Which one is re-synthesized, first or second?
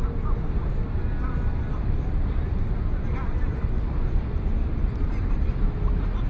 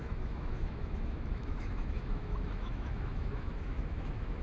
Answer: second